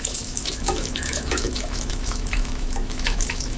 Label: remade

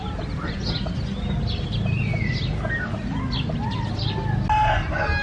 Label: recorded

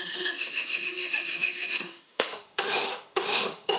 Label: remade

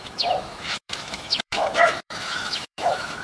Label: remade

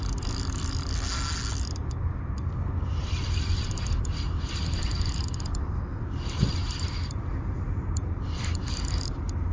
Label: recorded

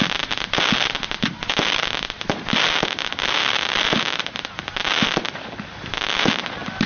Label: recorded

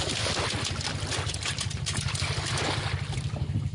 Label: recorded